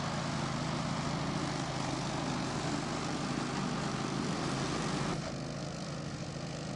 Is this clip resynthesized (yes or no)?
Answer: no